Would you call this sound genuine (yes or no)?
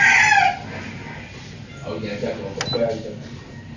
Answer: yes